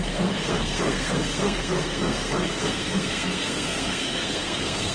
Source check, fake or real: fake